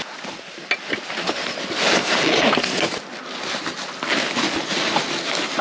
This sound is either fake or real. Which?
real